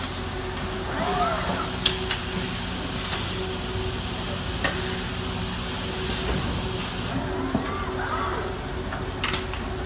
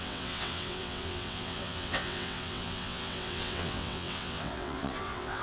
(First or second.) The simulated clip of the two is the second